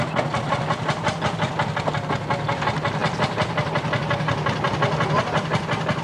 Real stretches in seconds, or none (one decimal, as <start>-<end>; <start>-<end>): 0.0-6.0